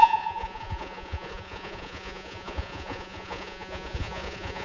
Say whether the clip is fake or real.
fake